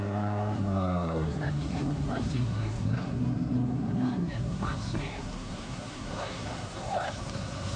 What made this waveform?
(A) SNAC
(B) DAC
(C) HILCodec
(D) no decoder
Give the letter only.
A